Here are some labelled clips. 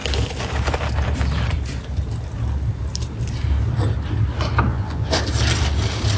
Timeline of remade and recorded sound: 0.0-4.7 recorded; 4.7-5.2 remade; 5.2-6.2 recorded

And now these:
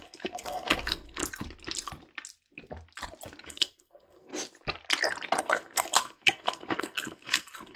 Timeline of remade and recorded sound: 0.0-1.2 remade; 1.2-3.4 recorded; 3.4-4.3 remade; 4.3-5.4 recorded; 5.4-7.8 remade

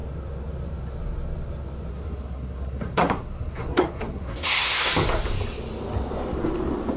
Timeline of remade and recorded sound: 0.0-1.9 recorded; 1.9-4.9 remade; 4.9-7.0 recorded

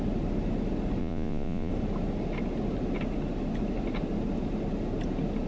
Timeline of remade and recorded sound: 0.0-1.0 recorded; 1.0-1.7 remade; 1.7-5.5 recorded

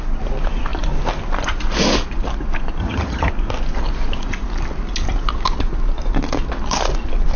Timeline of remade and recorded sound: 0.0-2.8 recorded; 2.8-3.3 remade; 3.3-7.4 recorded

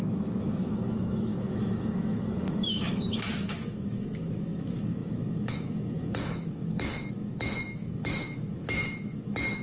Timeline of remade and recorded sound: 0.0-9.6 remade

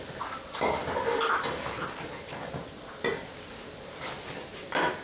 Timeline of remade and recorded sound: 0.0-5.0 recorded